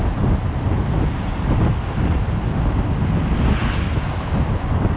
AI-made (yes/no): no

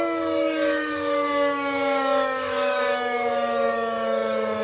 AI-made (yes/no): yes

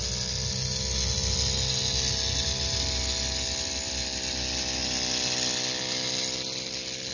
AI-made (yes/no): no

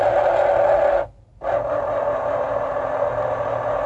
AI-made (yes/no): no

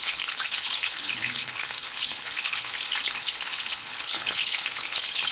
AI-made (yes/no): yes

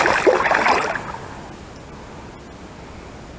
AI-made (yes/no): no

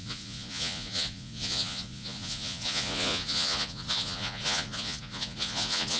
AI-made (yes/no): yes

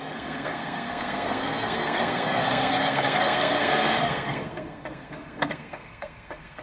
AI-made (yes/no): yes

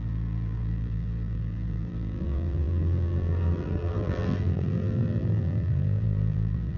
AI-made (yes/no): yes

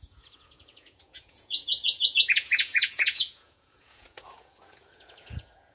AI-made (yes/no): yes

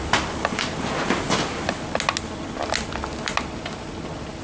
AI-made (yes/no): no